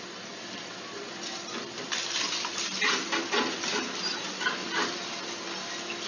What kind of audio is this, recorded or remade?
recorded